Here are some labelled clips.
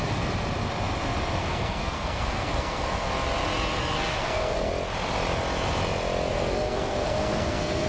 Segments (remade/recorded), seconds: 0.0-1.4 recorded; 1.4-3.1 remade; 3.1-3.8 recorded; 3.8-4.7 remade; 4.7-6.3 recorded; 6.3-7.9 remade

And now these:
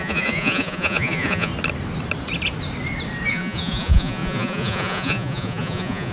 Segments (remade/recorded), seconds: 0.0-1.5 remade; 1.5-3.3 recorded; 3.3-6.1 remade

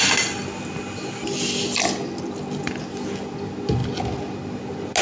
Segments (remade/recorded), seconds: 0.0-5.0 recorded

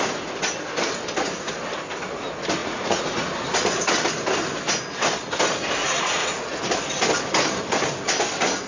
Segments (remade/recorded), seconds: 0.0-2.6 recorded; 2.6-3.3 remade; 3.3-5.8 recorded; 5.8-6.6 remade; 6.6-8.7 recorded

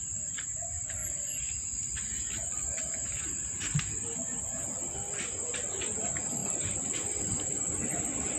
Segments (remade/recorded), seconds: 0.0-8.4 recorded

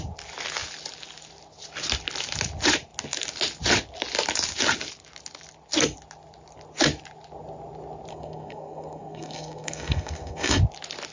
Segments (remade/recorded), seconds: 0.0-8.1 recorded; 8.1-10.6 remade; 10.6-11.1 recorded

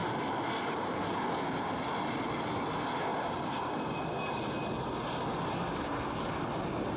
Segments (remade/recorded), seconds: 0.0-3.1 recorded; 3.1-3.7 remade; 3.7-7.0 recorded

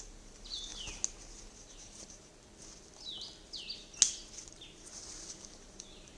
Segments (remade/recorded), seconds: 0.0-0.7 remade; 0.7-1.5 recorded; 1.5-2.3 remade; 2.3-5.3 recorded; 5.3-6.2 remade